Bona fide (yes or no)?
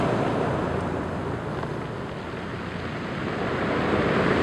yes